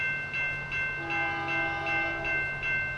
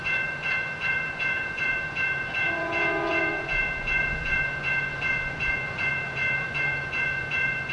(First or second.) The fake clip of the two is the second